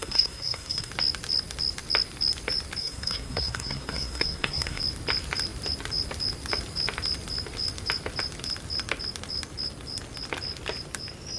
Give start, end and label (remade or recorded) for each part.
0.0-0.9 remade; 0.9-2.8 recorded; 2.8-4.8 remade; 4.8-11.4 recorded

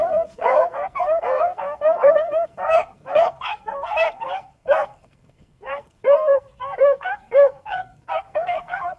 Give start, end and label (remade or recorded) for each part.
0.0-9.0 remade

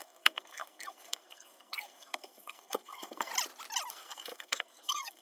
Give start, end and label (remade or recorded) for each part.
0.0-3.3 remade; 3.3-3.9 recorded; 3.9-5.2 remade

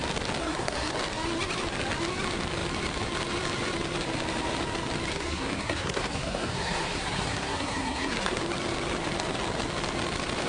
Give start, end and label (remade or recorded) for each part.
0.0-0.4 recorded; 0.4-0.9 remade; 0.9-5.1 recorded; 5.1-8.4 remade; 8.4-10.5 recorded

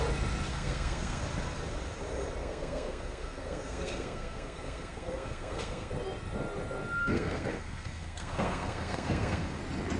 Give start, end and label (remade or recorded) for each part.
0.0-0.5 recorded; 0.5-1.2 remade; 1.2-2.4 recorded; 2.4-5.9 remade; 5.9-7.0 recorded; 7.0-9.6 remade; 9.6-10.0 recorded

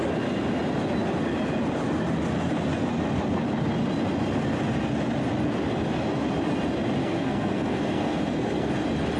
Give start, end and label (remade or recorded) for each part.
0.0-7.0 recorded; 7.0-8.7 remade; 8.7-9.2 recorded